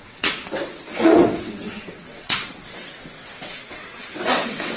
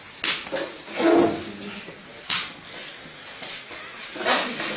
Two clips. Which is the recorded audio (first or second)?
second